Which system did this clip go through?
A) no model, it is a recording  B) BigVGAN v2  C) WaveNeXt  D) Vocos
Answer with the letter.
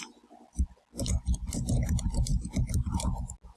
A